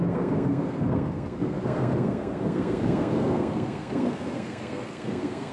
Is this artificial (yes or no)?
yes